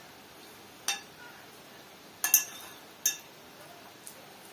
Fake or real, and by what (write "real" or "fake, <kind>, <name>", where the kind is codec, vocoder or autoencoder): real